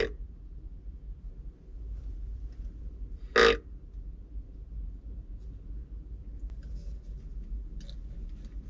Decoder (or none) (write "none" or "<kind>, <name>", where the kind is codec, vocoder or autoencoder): none